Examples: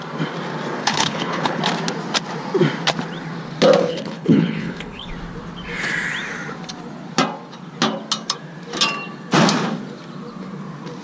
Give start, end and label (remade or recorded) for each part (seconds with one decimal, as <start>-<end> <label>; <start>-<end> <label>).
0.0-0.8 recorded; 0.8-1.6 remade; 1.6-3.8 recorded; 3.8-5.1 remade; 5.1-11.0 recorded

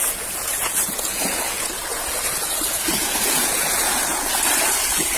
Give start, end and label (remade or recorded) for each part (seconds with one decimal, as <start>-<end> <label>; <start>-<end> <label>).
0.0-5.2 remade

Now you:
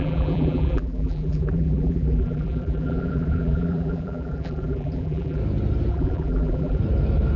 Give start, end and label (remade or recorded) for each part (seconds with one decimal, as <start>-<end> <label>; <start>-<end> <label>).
0.0-5.4 remade; 5.4-5.9 recorded; 5.9-6.8 remade; 6.8-7.4 recorded